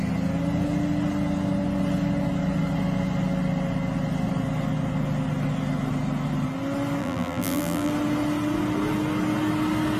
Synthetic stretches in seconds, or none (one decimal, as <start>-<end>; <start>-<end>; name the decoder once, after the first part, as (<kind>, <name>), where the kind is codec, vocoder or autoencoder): 7.0-7.9 (vocoder, BigVGAN v2)